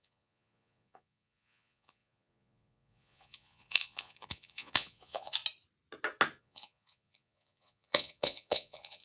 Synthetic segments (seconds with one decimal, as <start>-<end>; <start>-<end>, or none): 0.0-5.4; 6.4-9.0